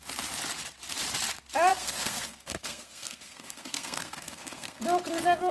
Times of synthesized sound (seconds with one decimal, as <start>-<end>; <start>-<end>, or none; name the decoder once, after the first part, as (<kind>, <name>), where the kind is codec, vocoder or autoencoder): 1.7-4.8 (codec, SNAC)